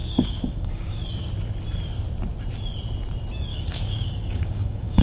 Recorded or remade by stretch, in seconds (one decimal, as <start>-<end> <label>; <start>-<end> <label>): 0.0-1.0 remade; 1.0-3.5 recorded; 3.5-5.0 remade